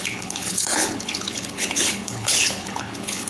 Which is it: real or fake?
fake